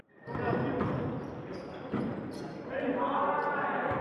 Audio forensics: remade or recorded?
recorded